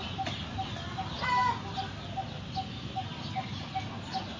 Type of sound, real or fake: real